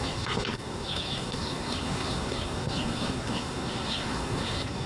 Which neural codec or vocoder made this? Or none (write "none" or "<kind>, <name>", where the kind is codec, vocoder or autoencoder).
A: codec, SNAC